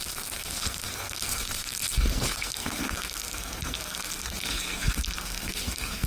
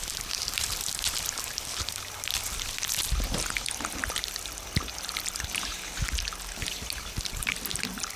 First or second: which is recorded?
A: second